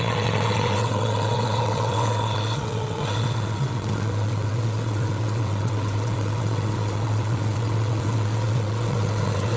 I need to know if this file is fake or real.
fake